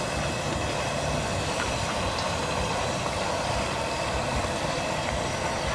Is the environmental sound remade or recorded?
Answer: recorded